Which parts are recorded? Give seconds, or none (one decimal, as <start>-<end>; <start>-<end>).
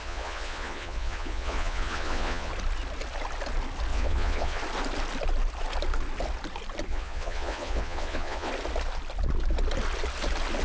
2.5-3.9; 4.6-6.9; 8.5-10.6